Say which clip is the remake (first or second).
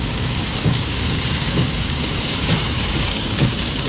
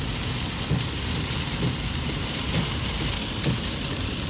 first